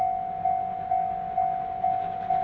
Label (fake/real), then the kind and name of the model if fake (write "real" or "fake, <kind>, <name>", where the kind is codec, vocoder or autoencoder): real